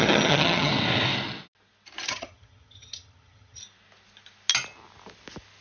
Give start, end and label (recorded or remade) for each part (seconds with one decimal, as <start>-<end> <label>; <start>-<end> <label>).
0.0-0.7 remade; 0.7-2.1 recorded; 2.1-3.6 remade; 3.6-5.6 recorded